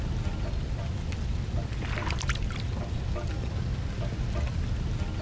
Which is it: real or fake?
real